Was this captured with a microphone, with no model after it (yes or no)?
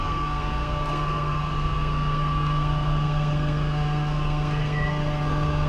no